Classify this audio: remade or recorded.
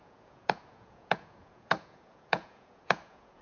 remade